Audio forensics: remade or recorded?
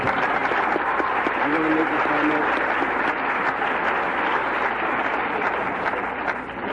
recorded